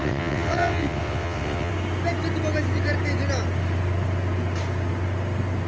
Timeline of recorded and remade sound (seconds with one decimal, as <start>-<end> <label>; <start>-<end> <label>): 0.0-1.7 remade; 1.7-5.7 recorded